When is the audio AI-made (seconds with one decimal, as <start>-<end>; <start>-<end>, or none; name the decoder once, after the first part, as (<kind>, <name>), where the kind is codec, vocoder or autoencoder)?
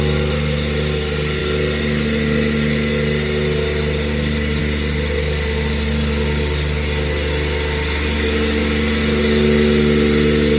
none